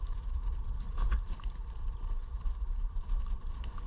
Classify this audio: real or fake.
fake